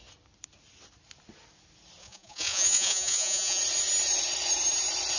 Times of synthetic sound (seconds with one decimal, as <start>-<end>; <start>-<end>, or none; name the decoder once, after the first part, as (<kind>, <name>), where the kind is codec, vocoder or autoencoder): 2.0-3.6 (vocoder, Vocos)